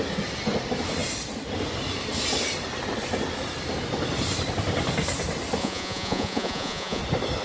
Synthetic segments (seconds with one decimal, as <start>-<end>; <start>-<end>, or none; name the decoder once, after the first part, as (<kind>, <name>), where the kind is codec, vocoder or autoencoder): 5.6-7.0 (vocoder, Vocos)